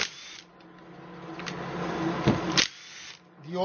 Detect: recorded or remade recorded